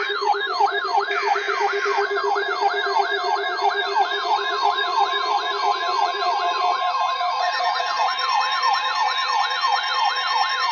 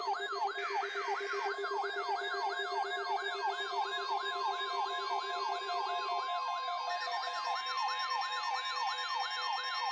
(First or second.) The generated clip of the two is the first